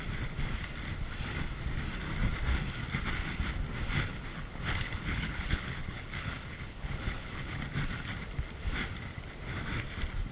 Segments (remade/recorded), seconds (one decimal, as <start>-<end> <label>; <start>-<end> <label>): 0.0-4.3 recorded; 4.3-7.6 remade; 7.6-10.3 recorded